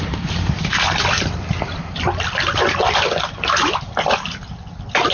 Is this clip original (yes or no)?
yes